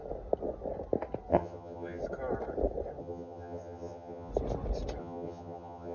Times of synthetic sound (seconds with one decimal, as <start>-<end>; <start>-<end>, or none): 1.3-2.0; 3.0-4.3; 5.0-5.9